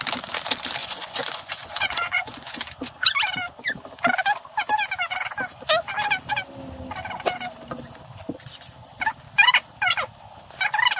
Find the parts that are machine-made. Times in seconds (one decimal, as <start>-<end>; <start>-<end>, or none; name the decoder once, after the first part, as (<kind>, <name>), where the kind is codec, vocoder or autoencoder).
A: 0.8-3.1 (vocoder, Vocos)